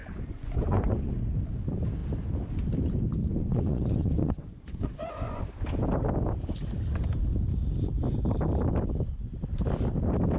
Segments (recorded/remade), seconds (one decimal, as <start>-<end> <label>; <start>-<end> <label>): 0.0-1.1 remade; 1.1-3.2 recorded; 3.2-5.4 remade; 5.4-10.4 recorded